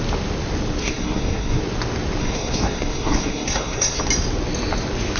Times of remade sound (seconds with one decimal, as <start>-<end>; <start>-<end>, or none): 0.8-1.6; 2.2-4.0